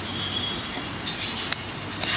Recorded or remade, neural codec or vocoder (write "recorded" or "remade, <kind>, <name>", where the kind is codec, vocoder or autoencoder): recorded